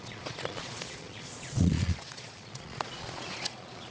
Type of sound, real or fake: fake